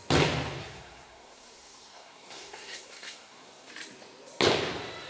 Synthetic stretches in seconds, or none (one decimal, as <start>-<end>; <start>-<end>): 0.6-3.7